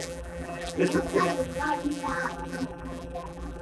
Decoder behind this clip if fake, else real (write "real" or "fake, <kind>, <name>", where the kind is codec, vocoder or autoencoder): fake, vocoder, BigVGAN v2